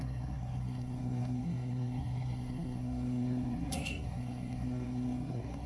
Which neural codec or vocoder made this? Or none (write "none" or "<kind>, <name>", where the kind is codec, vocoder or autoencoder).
codec, SNAC